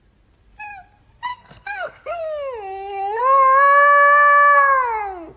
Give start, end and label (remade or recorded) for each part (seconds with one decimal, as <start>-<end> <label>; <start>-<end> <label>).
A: 0.0-1.3 recorded; 1.3-2.2 remade; 2.2-5.4 recorded

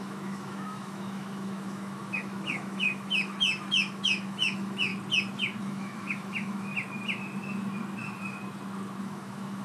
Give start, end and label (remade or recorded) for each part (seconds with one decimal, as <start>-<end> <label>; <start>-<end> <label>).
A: 0.0-4.9 remade; 4.9-5.6 recorded; 5.6-6.7 remade; 6.7-9.0 recorded; 9.0-9.6 remade